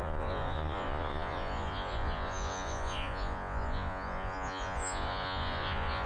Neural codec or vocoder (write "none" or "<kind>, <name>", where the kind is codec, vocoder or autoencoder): vocoder, Vocos